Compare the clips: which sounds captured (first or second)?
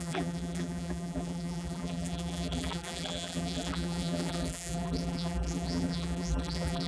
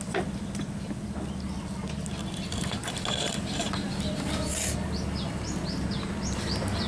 second